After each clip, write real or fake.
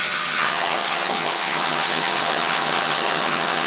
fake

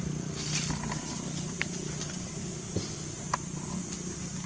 real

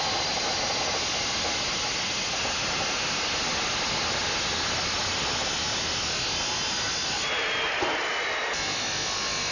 real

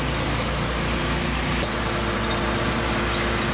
real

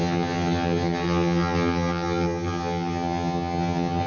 fake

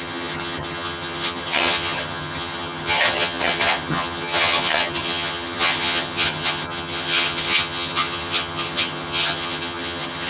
fake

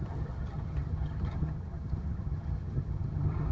fake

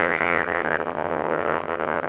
fake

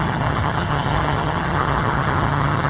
fake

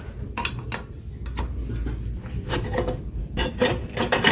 real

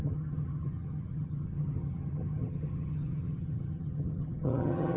fake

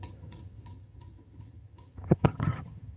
fake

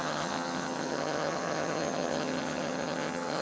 fake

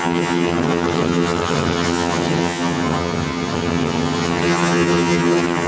fake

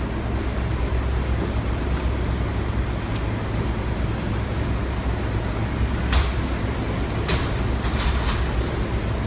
real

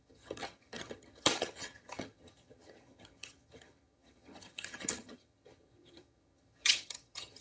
fake